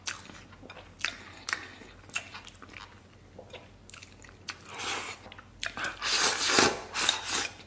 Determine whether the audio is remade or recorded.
recorded